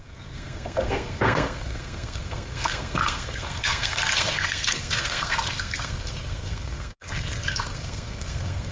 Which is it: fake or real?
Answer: fake